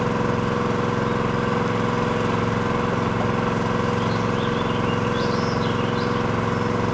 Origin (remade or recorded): recorded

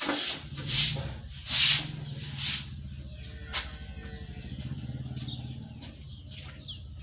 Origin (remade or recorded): recorded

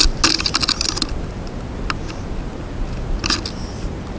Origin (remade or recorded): recorded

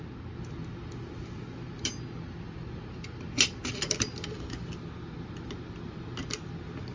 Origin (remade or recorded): recorded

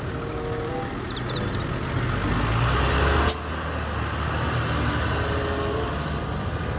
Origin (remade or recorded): recorded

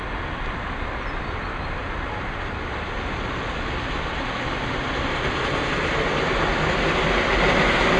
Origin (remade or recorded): recorded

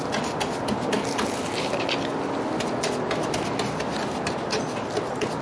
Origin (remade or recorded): recorded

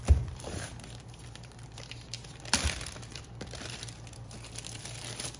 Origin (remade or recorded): remade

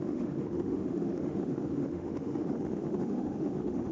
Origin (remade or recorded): remade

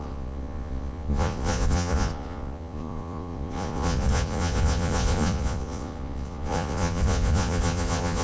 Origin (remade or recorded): remade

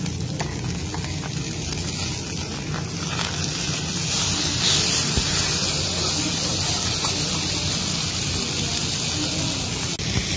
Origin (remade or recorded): recorded